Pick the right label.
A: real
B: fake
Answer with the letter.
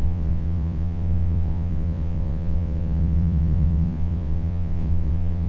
B